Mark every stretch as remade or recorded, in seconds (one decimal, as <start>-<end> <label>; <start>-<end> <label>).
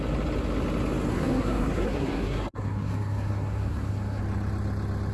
0.0-1.1 recorded; 1.1-4.2 remade; 4.2-5.1 recorded